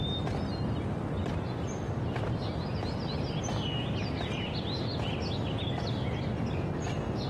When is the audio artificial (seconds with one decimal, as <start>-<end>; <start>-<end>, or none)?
none